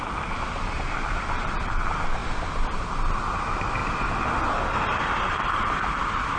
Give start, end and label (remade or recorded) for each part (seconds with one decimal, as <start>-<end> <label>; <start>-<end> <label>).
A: 0.0-6.4 recorded

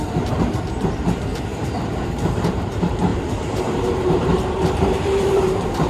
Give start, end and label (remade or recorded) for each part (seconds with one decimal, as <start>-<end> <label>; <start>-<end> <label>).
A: 0.0-5.9 remade

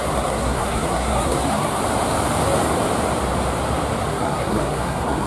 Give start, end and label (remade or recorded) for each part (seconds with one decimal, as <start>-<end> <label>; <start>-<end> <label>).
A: 0.0-1.8 remade; 1.8-4.1 recorded; 4.1-5.3 remade

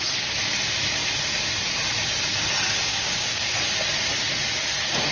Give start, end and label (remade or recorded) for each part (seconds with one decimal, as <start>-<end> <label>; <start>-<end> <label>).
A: 0.0-2.9 recorded; 2.9-3.5 remade; 3.5-5.1 recorded

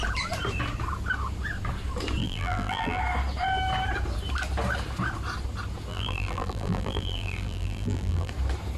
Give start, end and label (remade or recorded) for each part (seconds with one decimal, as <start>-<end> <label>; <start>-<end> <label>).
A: 0.0-2.2 recorded; 2.2-3.0 remade; 3.0-5.9 recorded; 5.9-8.3 remade; 8.3-8.8 recorded